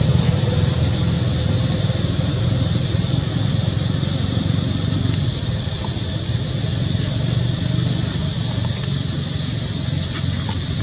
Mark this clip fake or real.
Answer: real